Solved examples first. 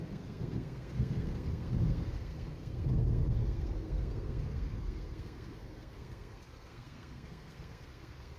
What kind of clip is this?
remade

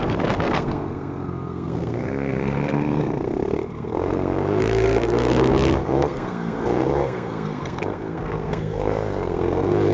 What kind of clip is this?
remade